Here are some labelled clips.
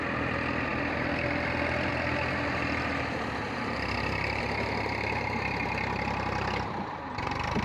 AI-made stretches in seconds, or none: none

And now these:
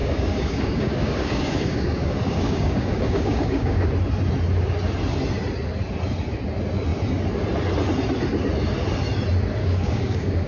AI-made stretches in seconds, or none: 0.0-3.9 (codec, DAC); 9.6-10.5